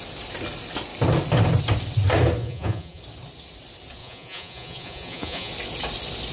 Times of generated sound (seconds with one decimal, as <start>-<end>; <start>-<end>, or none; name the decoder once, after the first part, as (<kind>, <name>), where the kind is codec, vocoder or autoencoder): 2.4-3.0 (vocoder, Vocos); 4.0-5.5